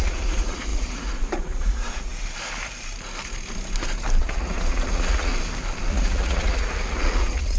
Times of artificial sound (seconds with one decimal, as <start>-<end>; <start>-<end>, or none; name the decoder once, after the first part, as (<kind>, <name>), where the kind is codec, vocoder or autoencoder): 0.0-2.1 (vocoder, Vocos); 4.2-5.3; 5.9-7.6